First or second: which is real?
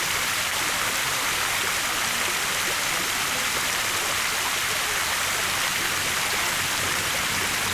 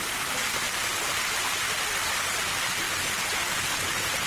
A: second